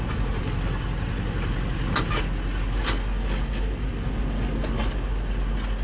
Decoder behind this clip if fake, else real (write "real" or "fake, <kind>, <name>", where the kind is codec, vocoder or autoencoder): real